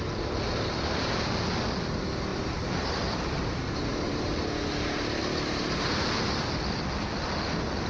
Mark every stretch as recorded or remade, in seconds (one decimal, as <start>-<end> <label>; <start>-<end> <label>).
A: 0.0-2.3 recorded; 2.3-4.2 remade; 4.2-5.2 recorded; 5.2-6.0 remade; 6.0-7.9 recorded